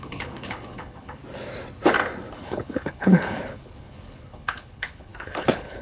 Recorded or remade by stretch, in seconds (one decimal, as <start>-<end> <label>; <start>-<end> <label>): 0.0-1.2 remade; 1.2-2.3 recorded; 2.3-5.8 remade